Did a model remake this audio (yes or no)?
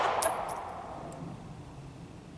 yes